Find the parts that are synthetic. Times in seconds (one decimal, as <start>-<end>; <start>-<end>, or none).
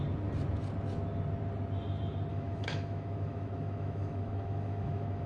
2.3-5.3